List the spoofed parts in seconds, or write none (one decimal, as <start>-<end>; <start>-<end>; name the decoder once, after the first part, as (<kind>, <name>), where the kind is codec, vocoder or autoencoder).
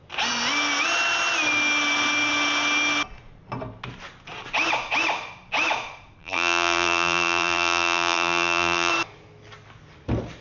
6.2-8.9 (vocoder, BigVGAN v2)